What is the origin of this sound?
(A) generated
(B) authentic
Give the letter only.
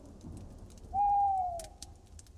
B